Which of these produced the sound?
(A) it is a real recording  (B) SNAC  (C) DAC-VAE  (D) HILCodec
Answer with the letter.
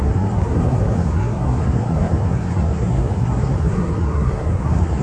B